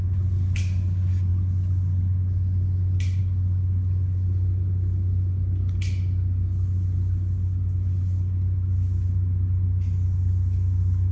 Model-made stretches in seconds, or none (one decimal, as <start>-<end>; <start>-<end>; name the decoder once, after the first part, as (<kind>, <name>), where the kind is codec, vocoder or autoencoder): none